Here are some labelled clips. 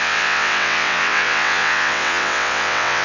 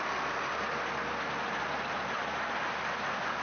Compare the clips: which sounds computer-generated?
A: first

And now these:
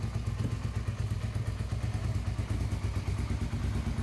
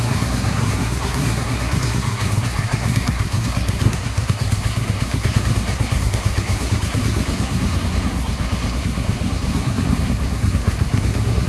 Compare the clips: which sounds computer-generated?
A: second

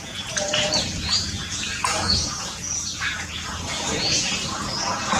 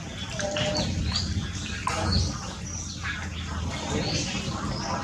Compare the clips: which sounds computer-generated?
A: first